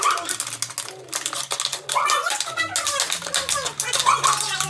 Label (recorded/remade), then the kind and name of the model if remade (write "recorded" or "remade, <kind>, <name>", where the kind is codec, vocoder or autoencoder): recorded